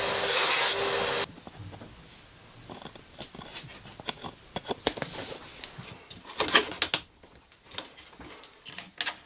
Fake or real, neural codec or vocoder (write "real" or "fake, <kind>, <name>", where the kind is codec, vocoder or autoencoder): real